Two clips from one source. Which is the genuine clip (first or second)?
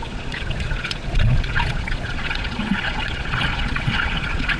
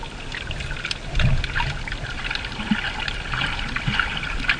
second